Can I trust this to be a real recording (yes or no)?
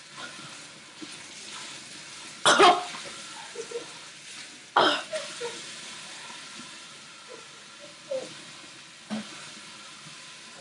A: yes